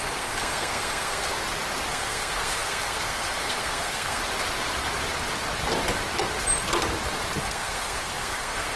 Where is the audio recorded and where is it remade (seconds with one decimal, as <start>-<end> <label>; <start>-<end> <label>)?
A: 0.0-1.3 remade; 1.3-1.9 recorded; 1.9-4.2 remade; 4.2-7.4 recorded; 7.4-8.8 remade